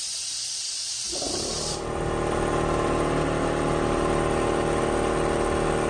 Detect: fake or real real